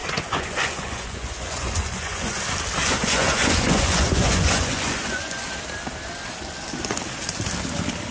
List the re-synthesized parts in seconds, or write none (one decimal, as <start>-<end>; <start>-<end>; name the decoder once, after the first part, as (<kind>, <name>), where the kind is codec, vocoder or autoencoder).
0.0-2.4 (vocoder, Vocos); 2.8-5.5

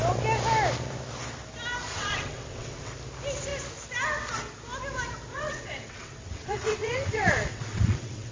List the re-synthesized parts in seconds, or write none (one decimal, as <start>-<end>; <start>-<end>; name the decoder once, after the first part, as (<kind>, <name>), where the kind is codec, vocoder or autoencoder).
1.9-2.9 (vocoder, WaveNeXt); 5.3-8.3

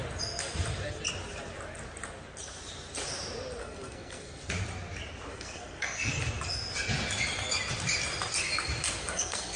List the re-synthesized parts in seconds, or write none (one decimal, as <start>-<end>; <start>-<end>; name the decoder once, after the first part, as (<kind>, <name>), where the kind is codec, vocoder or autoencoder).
3.6-4.4 (codec, SNAC); 5.3-6.1; 9.0-9.6

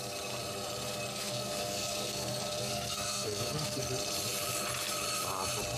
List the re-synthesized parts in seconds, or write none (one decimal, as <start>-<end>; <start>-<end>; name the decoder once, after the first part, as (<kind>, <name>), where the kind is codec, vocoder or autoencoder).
1.1-3.9 (codec, SNAC)

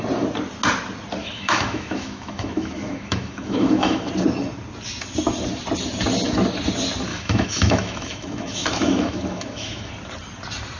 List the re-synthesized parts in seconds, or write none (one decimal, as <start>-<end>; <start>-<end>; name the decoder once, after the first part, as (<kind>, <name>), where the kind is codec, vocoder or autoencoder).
1.2-4.1 (autoencoder, DAC-VAE); 7.1-9.9

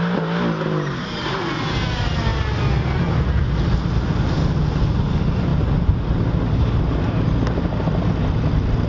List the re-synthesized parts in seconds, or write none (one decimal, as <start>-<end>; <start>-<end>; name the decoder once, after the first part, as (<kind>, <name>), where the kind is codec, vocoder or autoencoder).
none

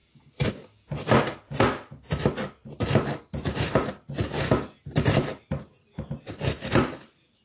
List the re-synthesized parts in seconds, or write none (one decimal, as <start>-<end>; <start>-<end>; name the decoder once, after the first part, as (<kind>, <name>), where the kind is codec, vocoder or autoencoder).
none